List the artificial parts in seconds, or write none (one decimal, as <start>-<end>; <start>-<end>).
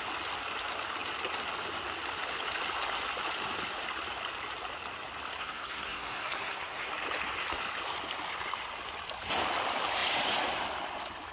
5.4-6.9